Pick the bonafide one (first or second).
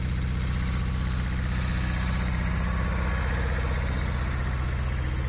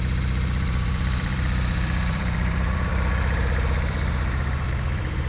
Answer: first